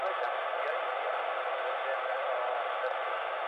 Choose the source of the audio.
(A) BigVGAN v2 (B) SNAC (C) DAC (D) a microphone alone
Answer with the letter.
D